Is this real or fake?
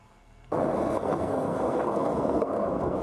fake